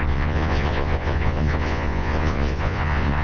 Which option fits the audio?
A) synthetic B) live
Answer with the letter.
A